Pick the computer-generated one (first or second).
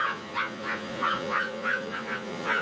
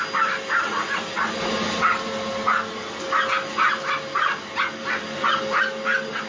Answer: first